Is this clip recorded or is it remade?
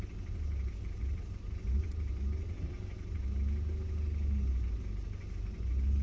recorded